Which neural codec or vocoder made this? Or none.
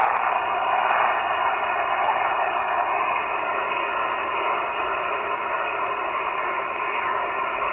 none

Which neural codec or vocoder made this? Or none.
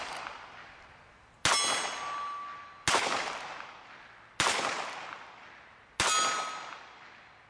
none